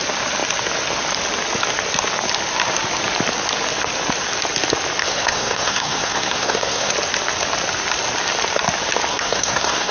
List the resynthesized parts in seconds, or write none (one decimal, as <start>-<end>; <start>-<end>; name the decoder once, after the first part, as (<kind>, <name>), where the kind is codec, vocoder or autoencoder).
5.0-6.9 (codec, SNAC); 9.1-9.9